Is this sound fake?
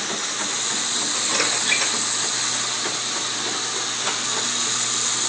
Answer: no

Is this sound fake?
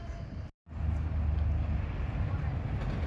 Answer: no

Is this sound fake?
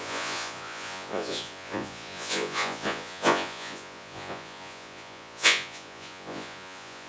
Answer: yes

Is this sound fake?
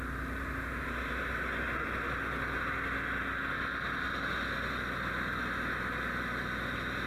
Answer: no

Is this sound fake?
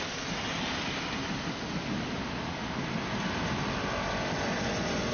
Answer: no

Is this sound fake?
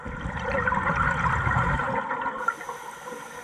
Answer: no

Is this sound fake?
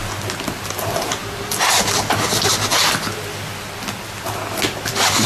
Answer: no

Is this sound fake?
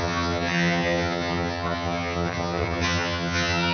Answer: yes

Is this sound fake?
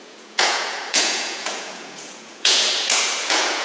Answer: yes